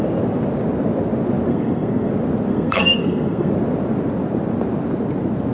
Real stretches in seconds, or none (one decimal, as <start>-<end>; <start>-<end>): 0.0-1.5; 2.1-2.5; 3.5-5.5

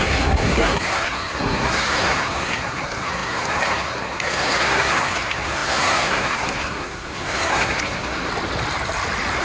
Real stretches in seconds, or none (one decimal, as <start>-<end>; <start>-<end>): 8.3-9.4

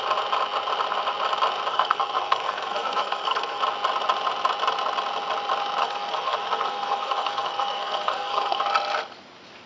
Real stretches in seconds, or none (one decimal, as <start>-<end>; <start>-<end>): 0.0-1.7; 3.6-5.8; 8.6-9.7

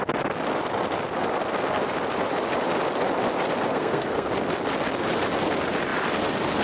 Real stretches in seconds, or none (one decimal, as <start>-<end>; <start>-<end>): 0.0-3.7; 4.3-6.6